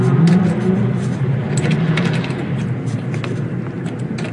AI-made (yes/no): no